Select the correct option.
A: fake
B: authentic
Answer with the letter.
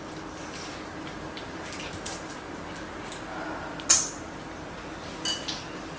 B